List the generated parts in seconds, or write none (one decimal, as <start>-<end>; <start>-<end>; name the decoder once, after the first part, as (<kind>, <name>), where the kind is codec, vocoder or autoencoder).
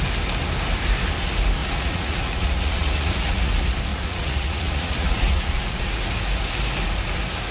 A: 1.6-3.5 (vocoder, Vocos); 3.9-6.0